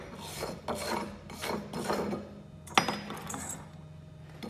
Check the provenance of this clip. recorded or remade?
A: recorded